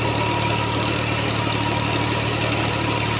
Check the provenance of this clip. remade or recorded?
recorded